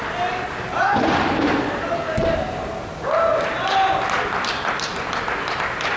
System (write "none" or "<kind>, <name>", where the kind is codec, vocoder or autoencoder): none